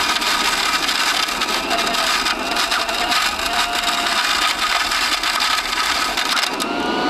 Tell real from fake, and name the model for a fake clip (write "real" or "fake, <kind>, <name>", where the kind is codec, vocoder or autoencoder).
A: real